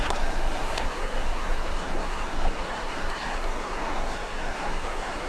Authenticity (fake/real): fake